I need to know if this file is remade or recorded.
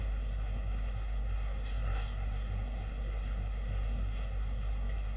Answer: remade